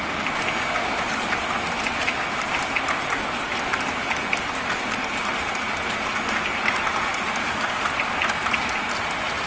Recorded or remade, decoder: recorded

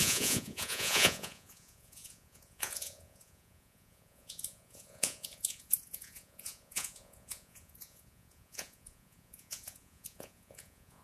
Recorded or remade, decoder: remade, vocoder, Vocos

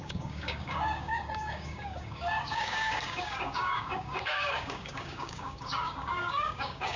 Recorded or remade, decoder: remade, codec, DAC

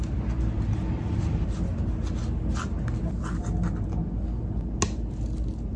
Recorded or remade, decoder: recorded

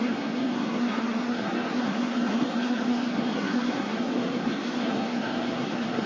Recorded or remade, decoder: remade, codec, SNAC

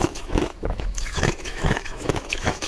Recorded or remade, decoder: remade, autoencoder, DAC-VAE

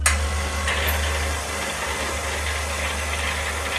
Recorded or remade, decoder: recorded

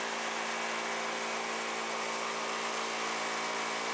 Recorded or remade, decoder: recorded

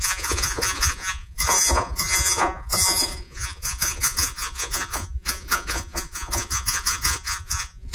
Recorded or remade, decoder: remade, vocoder, Vocos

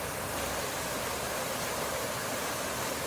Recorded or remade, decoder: recorded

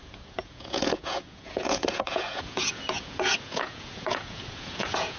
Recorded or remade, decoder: remade, vocoder, Vocos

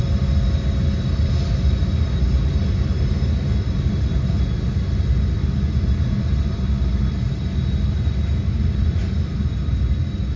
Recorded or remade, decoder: recorded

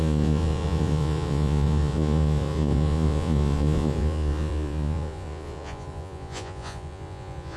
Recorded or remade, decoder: remade, vocoder, Vocos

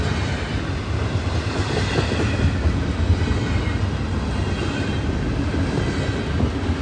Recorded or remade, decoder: recorded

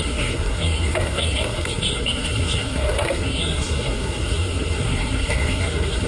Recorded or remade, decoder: remade, codec, SNAC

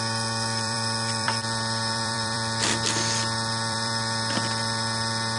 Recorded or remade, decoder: remade, vocoder, BigVGAN v2